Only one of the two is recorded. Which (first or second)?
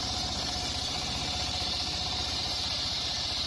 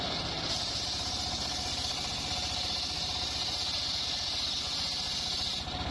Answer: second